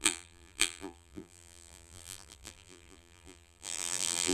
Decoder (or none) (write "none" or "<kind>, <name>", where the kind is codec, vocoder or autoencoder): vocoder, BigVGAN v2